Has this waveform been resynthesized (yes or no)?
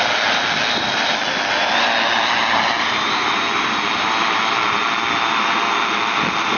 no